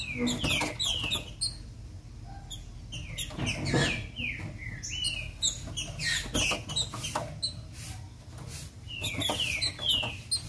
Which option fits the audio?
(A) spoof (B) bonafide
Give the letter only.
B